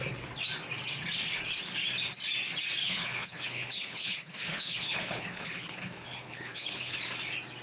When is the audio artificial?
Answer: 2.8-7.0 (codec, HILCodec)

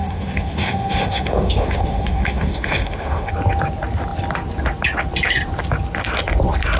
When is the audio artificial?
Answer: 0.0-3.3 (autoencoder, DAC-VAE)

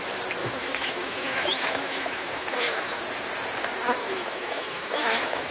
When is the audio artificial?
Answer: 0.4-3.0 (autoencoder, DAC-VAE); 4.0-5.5

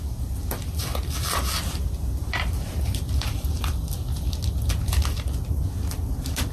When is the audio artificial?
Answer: 2.2-3.6 (vocoder, BigVGAN v2)

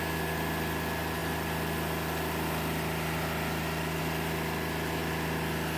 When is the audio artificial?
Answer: none

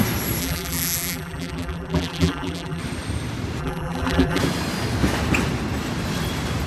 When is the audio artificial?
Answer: 0.4-2.8 (vocoder, BigVGAN v2); 3.6-4.4

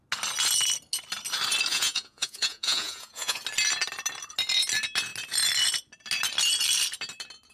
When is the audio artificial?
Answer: 1.7-3.4 (vocoder, Vocos)